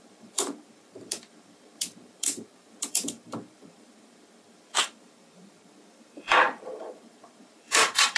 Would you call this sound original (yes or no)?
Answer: no